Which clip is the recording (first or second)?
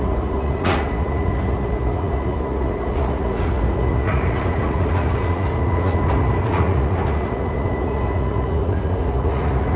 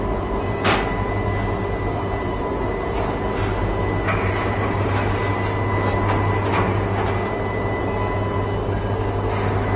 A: second